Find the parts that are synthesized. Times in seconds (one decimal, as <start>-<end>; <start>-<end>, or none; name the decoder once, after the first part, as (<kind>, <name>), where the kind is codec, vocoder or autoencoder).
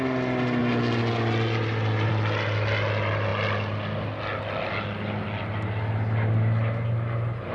none